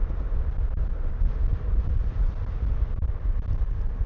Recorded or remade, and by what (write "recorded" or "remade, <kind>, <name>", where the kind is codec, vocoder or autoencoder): recorded